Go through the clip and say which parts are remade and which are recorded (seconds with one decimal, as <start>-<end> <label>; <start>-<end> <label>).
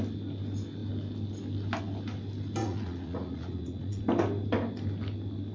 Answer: 0.0-2.6 recorded; 2.6-4.0 remade; 4.0-5.5 recorded